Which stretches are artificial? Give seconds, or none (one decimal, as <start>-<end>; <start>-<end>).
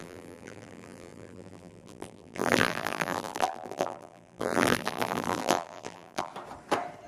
0.0-6.3